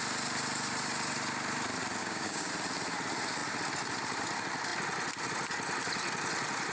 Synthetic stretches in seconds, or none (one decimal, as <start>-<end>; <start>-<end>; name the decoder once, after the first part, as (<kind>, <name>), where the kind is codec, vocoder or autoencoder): 2.0-2.5 (codec, DAC)

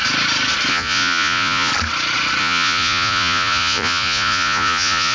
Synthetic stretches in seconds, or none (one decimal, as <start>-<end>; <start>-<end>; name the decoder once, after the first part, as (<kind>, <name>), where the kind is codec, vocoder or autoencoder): 0.7-1.7 (vocoder, Vocos); 2.4-5.1

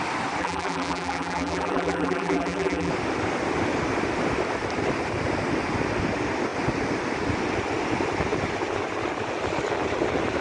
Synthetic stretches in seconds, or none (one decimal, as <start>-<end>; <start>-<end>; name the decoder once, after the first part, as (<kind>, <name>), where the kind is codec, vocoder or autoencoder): 0.4-2.9 (vocoder, BigVGAN v2)

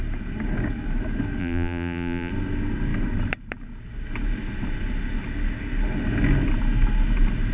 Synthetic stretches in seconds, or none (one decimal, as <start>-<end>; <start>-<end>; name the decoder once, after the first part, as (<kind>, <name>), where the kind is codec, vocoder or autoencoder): 1.4-2.3 (vocoder, BigVGAN v2)

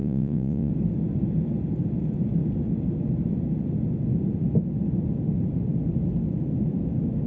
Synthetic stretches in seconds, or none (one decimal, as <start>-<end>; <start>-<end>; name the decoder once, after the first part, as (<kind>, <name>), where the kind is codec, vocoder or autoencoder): 0.0-0.7 (vocoder, Vocos)

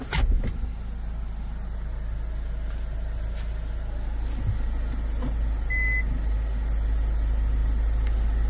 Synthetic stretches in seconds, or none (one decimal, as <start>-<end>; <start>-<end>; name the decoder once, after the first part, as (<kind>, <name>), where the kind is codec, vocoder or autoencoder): none

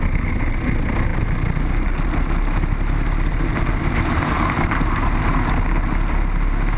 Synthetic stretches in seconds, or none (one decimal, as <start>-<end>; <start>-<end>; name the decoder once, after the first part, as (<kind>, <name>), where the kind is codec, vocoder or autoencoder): none